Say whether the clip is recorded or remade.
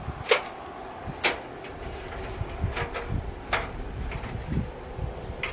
recorded